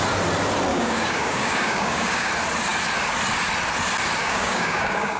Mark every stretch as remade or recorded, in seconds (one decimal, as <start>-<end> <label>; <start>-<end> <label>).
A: 0.0-0.7 recorded; 0.7-2.3 remade; 2.3-4.2 recorded; 4.2-5.2 remade